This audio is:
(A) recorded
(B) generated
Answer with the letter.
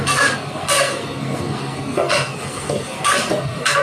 B